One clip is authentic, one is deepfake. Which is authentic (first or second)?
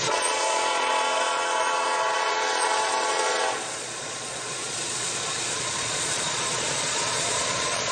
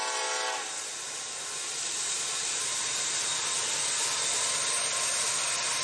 second